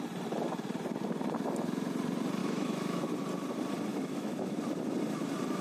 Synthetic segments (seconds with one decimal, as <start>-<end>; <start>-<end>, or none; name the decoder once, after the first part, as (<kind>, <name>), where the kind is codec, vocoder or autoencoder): 2.4-3.1 (autoencoder, DAC-VAE); 3.9-4.6